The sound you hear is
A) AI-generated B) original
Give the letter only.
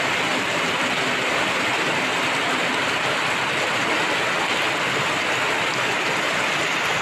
B